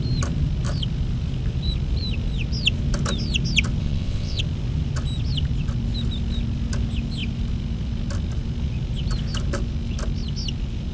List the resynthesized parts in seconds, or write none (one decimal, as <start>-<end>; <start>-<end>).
3.8-4.4